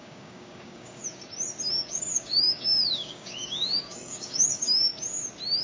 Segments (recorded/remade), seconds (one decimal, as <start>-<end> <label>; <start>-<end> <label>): 0.0-1.0 remade; 1.0-1.7 recorded; 1.7-4.9 remade; 4.9-5.6 recorded